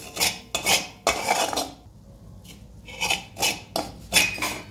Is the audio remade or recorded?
recorded